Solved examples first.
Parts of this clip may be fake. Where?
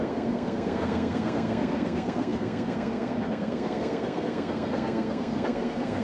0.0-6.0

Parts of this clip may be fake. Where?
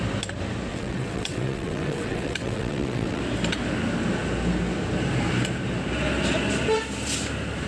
0.7-3.2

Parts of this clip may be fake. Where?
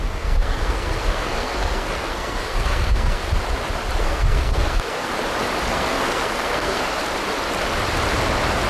0.0-3.2; 4.0-5.1; 5.7-7.0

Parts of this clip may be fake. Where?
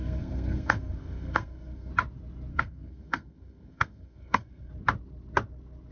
0.0-1.9; 2.5-4.7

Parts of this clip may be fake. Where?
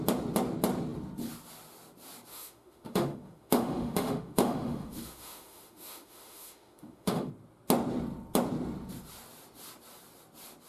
2.3-7.3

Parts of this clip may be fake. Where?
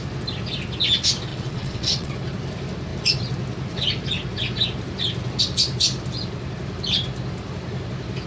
1.3-2.1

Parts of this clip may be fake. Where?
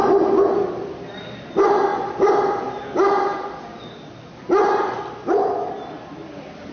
none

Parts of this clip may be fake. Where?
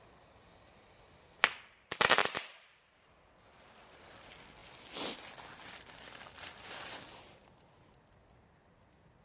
2.2-4.0; 4.6-6.8